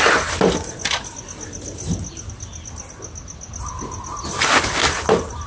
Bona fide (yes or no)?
yes